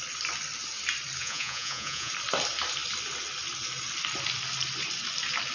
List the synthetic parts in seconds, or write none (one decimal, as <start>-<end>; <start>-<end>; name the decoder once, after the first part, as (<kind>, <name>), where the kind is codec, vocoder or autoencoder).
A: 1.2-2.1 (vocoder, Vocos)